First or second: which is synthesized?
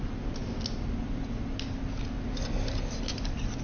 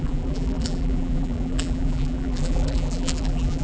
second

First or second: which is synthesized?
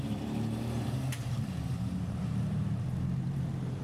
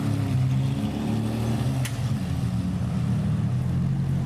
first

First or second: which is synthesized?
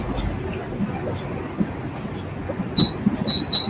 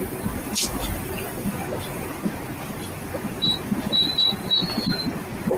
second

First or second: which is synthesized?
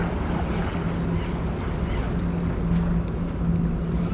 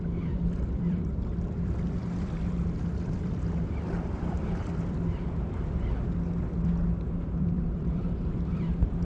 second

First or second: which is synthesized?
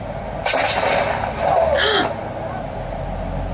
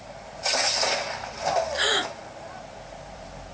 second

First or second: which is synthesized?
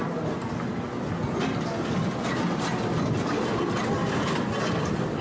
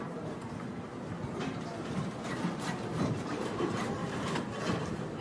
second